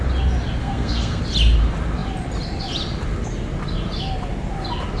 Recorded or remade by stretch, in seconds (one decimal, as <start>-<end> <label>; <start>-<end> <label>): 0.0-0.6 recorded; 0.6-1.2 remade; 1.2-5.0 recorded